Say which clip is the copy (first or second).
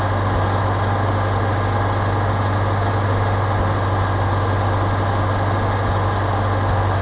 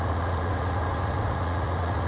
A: second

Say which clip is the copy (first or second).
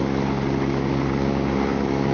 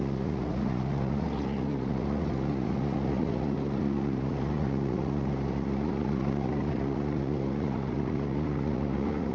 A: second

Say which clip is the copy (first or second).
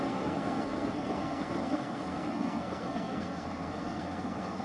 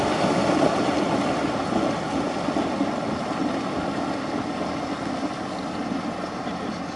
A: first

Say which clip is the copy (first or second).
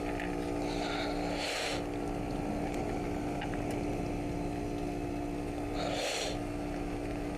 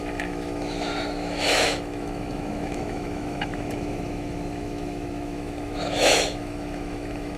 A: second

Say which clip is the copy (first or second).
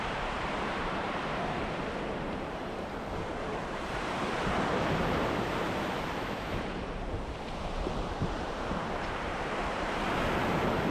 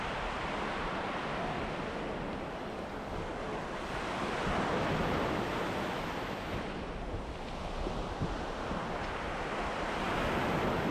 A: first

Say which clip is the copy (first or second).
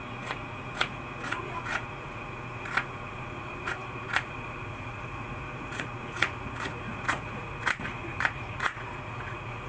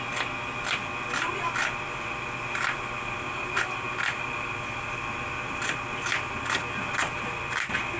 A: first